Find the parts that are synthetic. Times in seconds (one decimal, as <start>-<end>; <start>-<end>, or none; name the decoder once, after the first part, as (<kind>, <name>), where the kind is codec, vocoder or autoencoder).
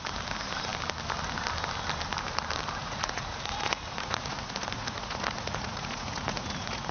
2.8-6.9 (vocoder, Vocos)